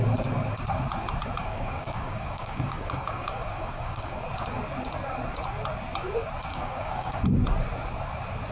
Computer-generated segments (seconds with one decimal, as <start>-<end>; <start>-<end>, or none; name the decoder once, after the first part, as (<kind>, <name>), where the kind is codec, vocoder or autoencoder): 1.4-4.2 (codec, DAC); 6.5-7.2